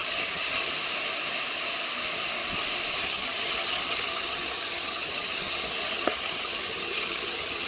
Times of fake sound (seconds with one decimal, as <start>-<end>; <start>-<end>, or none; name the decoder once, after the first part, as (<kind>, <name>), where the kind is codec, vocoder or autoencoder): 0.0-0.7 (vocoder, HiFi-GAN); 3.0-7.7